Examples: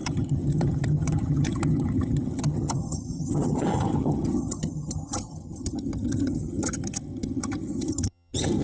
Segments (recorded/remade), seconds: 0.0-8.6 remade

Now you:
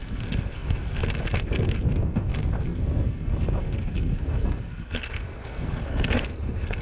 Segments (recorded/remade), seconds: 0.0-6.8 remade

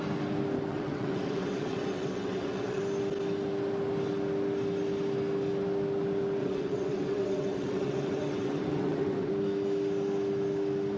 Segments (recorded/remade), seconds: 0.0-0.7 recorded; 0.7-2.8 remade; 2.8-6.4 recorded; 6.4-9.3 remade; 9.3-11.0 recorded